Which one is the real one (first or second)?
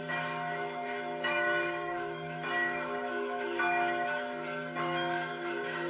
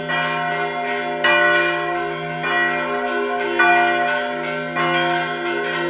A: second